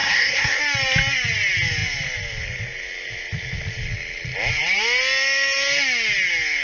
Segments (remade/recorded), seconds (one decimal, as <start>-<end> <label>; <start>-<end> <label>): 0.0-0.6 remade; 0.6-6.6 recorded